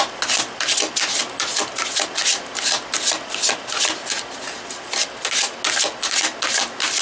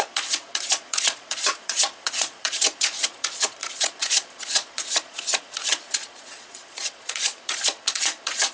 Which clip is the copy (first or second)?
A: second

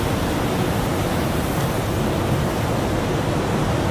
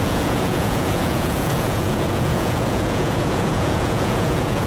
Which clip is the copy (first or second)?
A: second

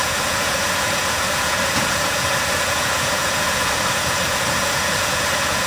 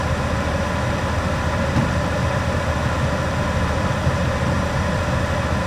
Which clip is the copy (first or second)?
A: first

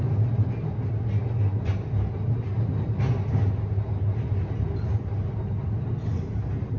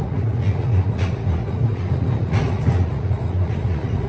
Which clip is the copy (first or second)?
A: second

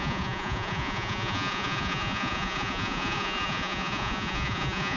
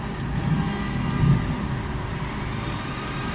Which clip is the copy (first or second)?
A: first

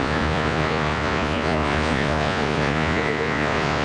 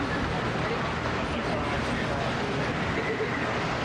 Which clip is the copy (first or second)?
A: first